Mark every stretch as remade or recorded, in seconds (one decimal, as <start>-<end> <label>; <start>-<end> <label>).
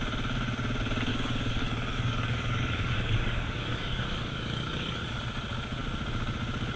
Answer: 0.0-1.1 recorded; 1.1-5.2 remade; 5.2-6.8 recorded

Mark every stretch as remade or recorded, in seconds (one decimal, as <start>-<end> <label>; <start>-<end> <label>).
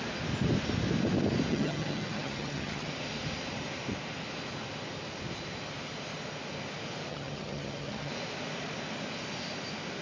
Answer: 0.0-1.5 recorded; 1.5-2.9 remade; 2.9-7.1 recorded; 7.1-8.1 remade; 8.1-10.0 recorded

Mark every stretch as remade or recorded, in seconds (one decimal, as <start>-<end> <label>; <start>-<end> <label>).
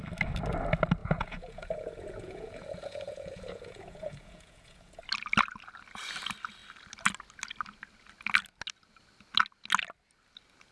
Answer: 0.0-1.0 recorded; 1.0-5.0 remade; 5.0-10.7 recorded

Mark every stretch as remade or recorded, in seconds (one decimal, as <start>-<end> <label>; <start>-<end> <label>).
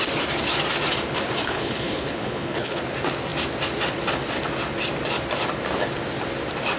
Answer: 0.0-1.4 recorded; 1.4-2.8 remade; 2.8-6.8 recorded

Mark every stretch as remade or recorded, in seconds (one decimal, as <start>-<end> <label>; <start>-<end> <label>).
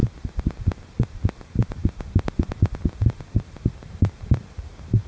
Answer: 0.0-5.1 recorded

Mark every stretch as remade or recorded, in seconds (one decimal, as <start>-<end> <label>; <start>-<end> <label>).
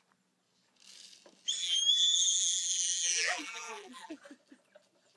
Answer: 0.0-1.6 recorded; 1.6-4.2 remade; 4.2-5.2 recorded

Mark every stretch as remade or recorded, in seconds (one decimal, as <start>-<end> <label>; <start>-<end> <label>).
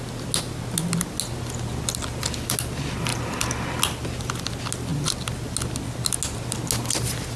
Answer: 0.0-7.4 recorded